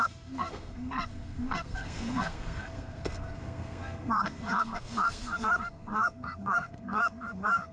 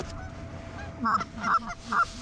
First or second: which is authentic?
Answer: second